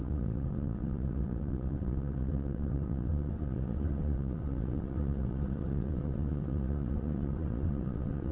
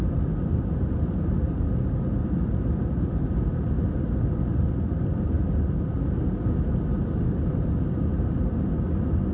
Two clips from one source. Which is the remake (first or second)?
first